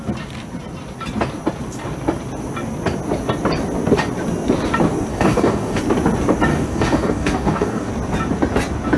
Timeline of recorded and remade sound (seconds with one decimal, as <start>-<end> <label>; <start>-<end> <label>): 0.0-5.1 recorded; 5.1-5.8 remade; 5.8-6.5 recorded; 6.5-7.9 remade; 7.9-9.0 recorded